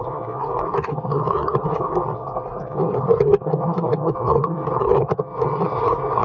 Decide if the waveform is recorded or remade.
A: remade